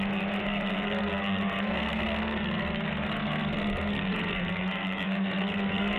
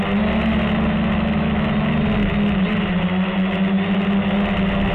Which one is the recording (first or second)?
second